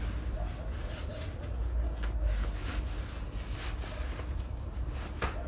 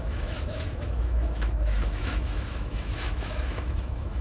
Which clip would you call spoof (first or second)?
second